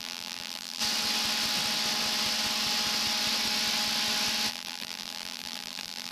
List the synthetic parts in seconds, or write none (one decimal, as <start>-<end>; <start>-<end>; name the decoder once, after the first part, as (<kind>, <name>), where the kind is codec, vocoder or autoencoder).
0.0-0.8 (vocoder, BigVGAN v2); 4.5-6.1